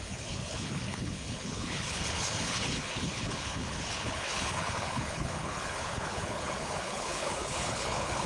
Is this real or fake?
fake